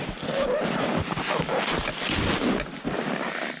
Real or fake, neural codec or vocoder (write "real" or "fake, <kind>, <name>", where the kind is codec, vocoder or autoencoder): real